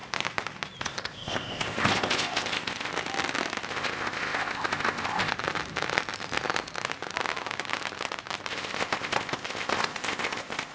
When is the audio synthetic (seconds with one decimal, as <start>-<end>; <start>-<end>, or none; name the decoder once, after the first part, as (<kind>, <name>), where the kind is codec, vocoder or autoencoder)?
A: 0.8-2.9 (codec, ZipCodec); 3.7-5.3; 8.5-10.7